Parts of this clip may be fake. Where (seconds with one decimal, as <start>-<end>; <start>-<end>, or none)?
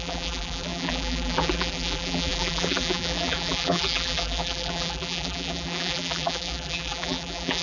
0.0-7.6